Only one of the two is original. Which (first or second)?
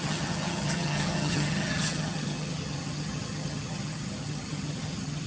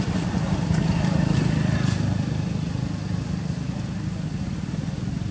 second